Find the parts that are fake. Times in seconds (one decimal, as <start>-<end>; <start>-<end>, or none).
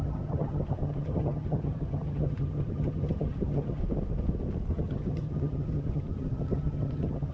0.0-3.8; 4.7-7.3